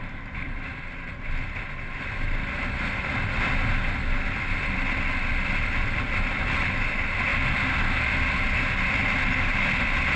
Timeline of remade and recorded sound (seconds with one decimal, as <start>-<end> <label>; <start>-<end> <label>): 0.0-10.2 recorded